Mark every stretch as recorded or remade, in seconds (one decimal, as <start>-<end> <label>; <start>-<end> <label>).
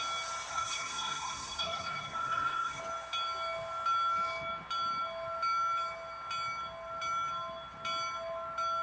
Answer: 0.0-0.5 recorded; 0.5-2.8 remade; 2.8-8.8 recorded